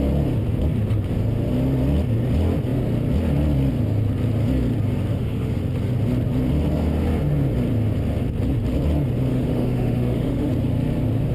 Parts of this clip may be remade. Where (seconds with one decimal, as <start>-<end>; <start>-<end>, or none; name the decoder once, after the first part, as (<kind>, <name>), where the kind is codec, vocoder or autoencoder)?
5.1-5.6 (autoencoder, DAC-VAE); 9.3-10.5